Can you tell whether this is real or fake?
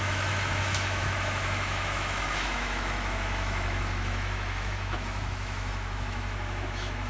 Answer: fake